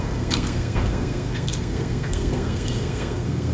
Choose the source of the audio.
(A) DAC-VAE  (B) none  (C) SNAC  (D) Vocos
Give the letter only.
C